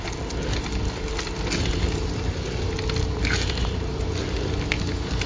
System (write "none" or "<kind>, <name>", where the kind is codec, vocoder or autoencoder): none